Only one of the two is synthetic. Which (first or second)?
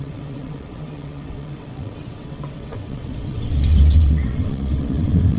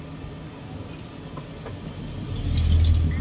first